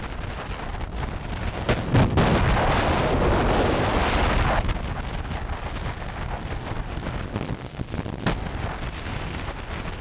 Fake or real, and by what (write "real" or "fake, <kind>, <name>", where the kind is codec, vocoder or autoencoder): real